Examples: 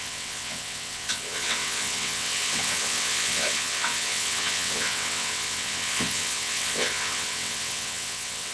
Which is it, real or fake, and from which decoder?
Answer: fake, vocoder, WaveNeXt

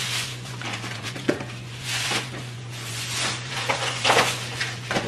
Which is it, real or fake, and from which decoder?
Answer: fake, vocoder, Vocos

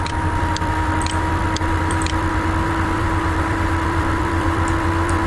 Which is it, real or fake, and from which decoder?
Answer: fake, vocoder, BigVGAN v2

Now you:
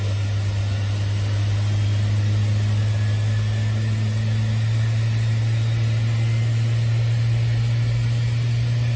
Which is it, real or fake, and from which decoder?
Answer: real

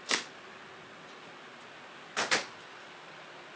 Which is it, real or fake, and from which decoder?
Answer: real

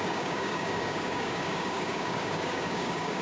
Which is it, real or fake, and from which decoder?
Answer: fake, codec, DAC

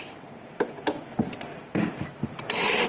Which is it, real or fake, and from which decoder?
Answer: fake, vocoder, BigVGAN v2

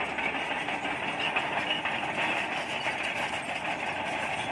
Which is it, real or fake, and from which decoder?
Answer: real